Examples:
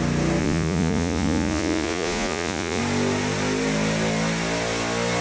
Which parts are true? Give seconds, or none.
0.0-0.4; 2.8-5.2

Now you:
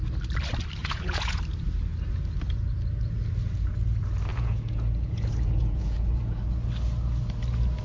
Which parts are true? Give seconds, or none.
0.0-0.8; 1.4-4.3; 6.4-7.8

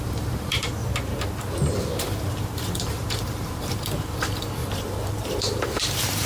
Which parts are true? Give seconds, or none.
0.8-2.0

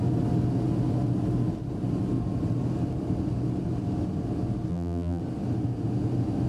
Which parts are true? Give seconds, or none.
0.0-4.7; 5.2-6.5

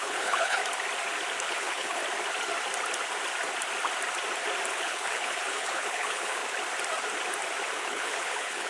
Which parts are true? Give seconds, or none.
0.6-1.4; 2.0-4.7; 6.4-7.7